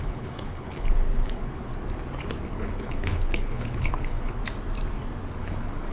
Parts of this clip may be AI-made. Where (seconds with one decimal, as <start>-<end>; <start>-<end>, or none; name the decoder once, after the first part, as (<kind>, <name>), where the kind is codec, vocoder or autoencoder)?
0.0-1.7 (codec, HILCodec); 2.5-4.4; 5.4-5.9

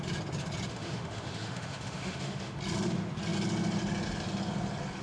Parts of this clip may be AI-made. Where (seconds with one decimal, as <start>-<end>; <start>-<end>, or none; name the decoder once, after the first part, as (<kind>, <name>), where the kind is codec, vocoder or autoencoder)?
0.7-2.6 (autoencoder, DAC-VAE)

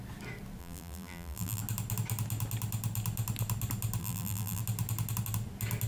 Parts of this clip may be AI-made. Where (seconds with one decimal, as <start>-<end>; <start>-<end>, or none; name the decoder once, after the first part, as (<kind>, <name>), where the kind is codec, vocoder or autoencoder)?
0.6-1.6 (vocoder, BigVGAN v2); 4.0-4.6

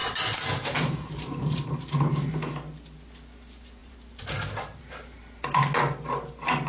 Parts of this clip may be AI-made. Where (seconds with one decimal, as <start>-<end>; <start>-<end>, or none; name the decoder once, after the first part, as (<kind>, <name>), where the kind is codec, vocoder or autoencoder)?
0.0-2.5 (vocoder, BigVGAN v2); 3.8-5.6

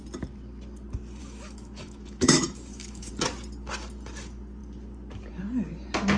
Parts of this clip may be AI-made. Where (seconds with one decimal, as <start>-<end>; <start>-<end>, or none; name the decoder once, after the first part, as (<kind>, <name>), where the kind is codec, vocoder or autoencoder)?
1.2-3.1 (autoencoder, DAC-VAE)

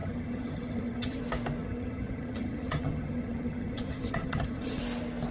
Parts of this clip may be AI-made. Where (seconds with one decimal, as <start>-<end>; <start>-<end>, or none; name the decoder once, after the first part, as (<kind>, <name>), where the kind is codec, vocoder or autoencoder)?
0.0-1.2 (vocoder, HiFi-GAN); 1.6-4.8

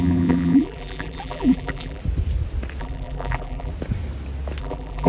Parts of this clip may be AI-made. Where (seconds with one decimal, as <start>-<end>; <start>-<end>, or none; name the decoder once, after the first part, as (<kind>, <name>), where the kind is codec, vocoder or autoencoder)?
0.0-2.0 (vocoder, BigVGAN v2); 2.8-3.7; 4.6-5.1